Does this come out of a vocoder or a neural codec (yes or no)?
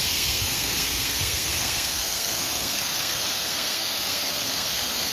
yes